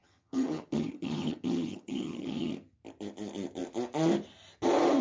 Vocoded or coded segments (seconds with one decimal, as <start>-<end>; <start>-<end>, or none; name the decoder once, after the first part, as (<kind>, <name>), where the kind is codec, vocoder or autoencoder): 0.0-2.5 (vocoder, HiFi-GAN)